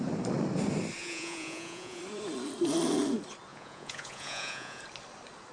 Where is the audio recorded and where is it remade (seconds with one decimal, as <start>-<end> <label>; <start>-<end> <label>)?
0.0-1.0 recorded; 1.0-2.0 remade; 2.0-3.5 recorded; 3.5-4.8 remade; 4.8-5.5 recorded